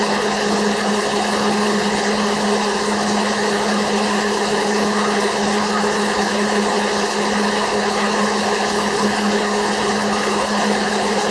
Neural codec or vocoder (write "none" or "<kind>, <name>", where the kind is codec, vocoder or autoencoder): codec, HILCodec